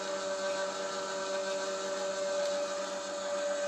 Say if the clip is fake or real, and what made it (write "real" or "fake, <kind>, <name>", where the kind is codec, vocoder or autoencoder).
real